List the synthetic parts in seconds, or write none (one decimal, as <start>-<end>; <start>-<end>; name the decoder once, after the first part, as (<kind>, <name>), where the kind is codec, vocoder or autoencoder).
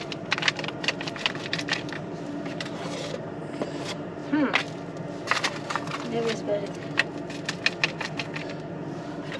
0.0-4.2 (vocoder, BigVGAN v2); 8.7-9.4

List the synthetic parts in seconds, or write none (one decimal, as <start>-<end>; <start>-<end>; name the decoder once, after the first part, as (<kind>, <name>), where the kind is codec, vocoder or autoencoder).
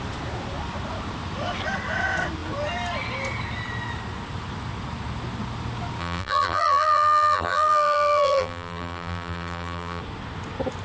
6.0-10.0 (vocoder, BigVGAN v2)